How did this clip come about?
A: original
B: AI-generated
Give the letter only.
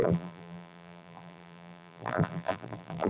B